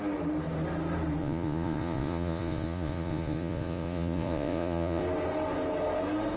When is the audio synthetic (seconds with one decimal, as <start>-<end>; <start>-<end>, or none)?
1.2-5.0